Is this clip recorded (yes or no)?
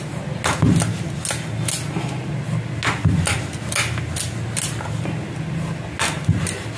yes